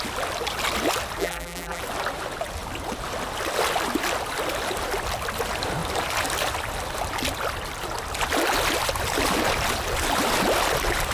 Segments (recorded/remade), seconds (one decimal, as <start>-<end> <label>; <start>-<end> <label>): 0.0-1.2 recorded; 1.2-1.8 remade; 1.8-11.1 recorded

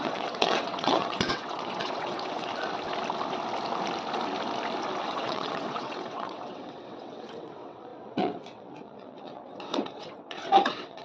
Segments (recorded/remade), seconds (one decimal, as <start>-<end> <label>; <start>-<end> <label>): 0.0-2.5 remade; 2.5-5.0 recorded; 5.0-11.0 remade

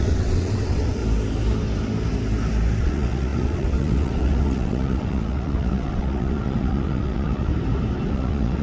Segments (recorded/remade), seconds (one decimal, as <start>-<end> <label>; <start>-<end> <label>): 0.0-1.0 remade; 1.0-2.8 recorded; 2.8-7.5 remade; 7.5-8.1 recorded; 8.1-8.6 remade

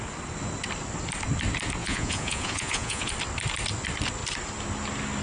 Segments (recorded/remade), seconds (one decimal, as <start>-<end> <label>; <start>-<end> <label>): 0.0-1.8 recorded; 1.8-3.1 remade; 3.1-5.2 recorded